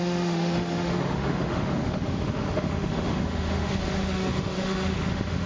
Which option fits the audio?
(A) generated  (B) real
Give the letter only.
A